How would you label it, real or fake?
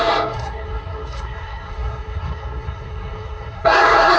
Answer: fake